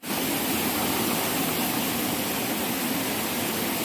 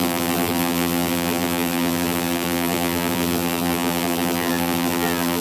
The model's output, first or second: second